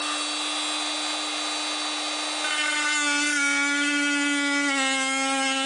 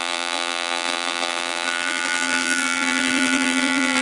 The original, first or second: first